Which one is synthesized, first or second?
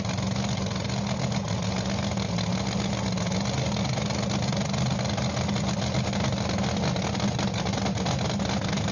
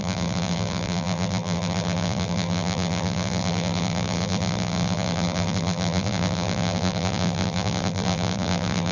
second